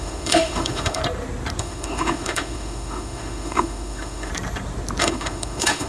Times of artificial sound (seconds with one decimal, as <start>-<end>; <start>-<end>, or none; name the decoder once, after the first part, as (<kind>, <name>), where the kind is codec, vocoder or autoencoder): 0.0-1.0 (autoencoder, DAC-VAE); 1.6-4.3; 5.0-5.9